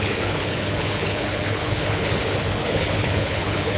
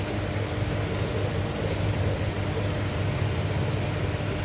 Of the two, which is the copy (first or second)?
first